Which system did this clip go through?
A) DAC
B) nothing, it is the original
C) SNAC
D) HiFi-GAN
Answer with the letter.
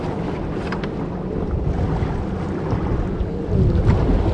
B